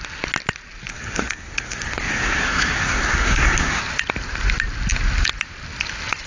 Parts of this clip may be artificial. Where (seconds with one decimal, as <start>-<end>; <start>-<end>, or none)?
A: 0.9-3.8